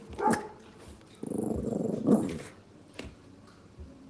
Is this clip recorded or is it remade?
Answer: remade